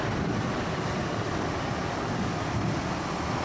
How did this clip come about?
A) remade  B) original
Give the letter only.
B